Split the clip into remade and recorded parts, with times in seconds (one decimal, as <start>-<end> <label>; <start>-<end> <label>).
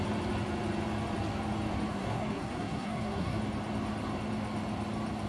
0.0-1.9 recorded; 1.9-3.4 remade; 3.4-5.3 recorded